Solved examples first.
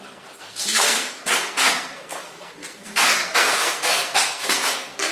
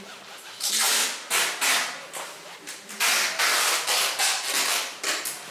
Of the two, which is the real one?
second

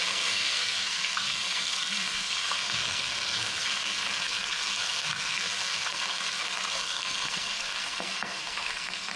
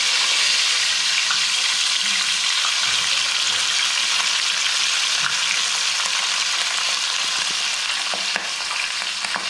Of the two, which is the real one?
second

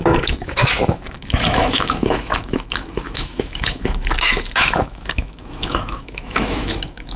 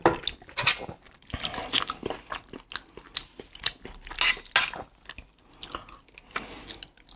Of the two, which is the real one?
second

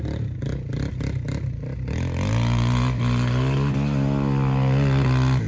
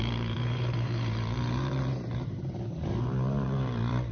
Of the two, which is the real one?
first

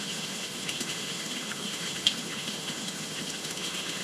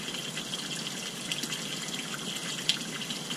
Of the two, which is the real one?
second